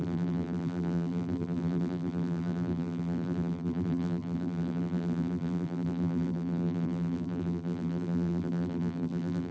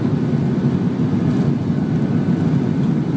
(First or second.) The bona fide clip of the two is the second